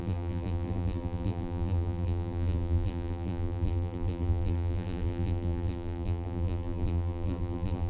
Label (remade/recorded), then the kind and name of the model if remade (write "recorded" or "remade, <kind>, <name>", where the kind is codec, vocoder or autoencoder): remade, vocoder, BigVGAN v2